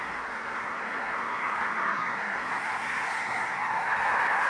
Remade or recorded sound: remade